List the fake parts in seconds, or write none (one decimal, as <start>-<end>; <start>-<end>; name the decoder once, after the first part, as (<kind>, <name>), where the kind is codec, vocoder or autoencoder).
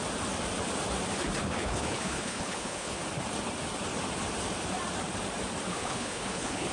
1.4-3.0 (codec, HILCodec); 5.7-6.7